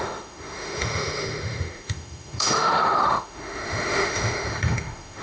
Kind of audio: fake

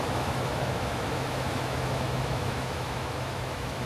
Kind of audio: fake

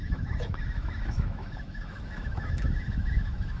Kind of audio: fake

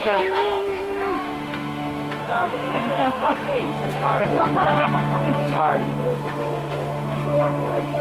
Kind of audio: fake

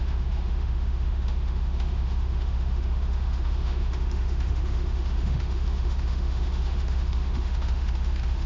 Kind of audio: fake